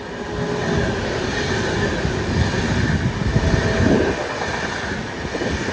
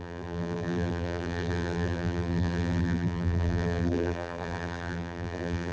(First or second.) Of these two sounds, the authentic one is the first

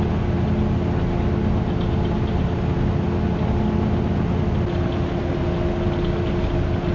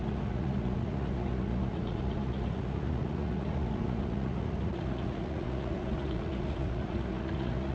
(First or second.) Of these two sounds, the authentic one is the first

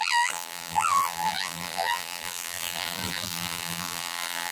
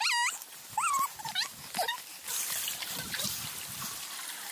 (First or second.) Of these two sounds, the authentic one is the second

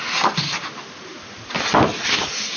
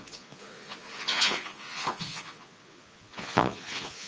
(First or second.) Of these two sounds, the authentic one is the first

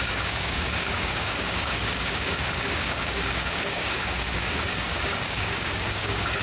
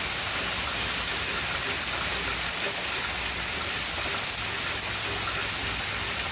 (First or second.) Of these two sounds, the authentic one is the second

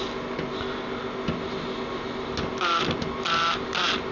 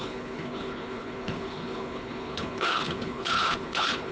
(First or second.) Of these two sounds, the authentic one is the first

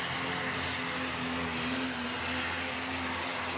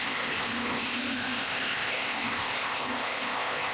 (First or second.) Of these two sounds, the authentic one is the first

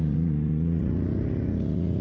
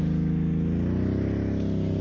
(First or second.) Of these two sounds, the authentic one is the second